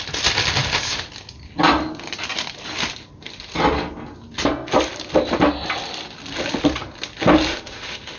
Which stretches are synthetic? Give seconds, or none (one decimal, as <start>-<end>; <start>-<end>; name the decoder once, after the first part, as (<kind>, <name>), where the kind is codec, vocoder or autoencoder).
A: 7.5-8.2 (autoencoder, DAC-VAE)